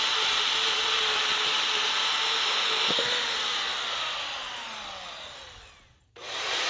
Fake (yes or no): no